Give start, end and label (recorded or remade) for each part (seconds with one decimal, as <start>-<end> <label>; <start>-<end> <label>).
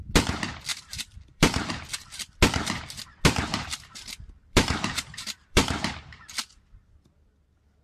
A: 0.0-0.7 recorded; 0.7-1.7 remade; 1.7-3.5 recorded; 3.5-5.9 remade; 5.9-7.8 recorded